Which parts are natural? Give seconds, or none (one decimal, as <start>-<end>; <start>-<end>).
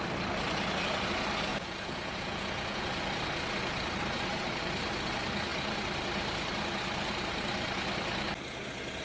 0.0-1.5; 2.8-9.0